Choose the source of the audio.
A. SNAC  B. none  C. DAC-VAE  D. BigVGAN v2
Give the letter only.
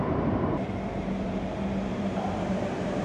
D